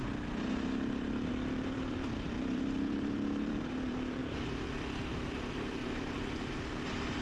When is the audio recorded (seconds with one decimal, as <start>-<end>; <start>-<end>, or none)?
0.0-1.3; 4.2-5.1; 5.8-6.7